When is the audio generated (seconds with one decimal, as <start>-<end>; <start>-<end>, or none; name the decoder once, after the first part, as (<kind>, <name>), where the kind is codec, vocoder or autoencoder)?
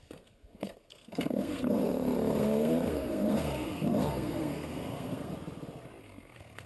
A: 0.0-5.3 (codec, SNAC); 6.0-6.7